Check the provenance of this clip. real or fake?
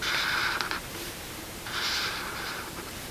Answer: fake